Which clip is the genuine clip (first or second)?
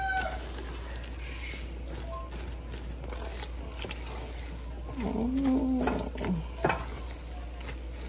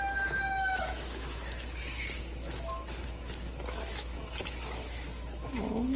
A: first